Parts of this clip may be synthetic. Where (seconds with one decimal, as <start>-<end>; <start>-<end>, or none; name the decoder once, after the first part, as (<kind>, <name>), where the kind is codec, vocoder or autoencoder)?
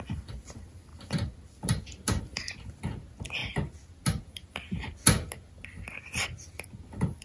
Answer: none